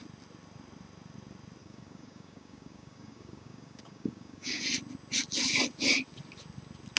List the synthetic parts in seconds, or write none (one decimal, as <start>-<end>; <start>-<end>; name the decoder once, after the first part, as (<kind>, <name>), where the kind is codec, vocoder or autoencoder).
1.6-4.6 (codec, DAC)